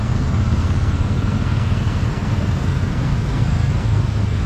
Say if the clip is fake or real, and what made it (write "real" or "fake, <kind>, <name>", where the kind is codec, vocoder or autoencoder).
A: fake, codec, SNAC